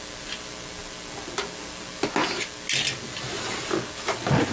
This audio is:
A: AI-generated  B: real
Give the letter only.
B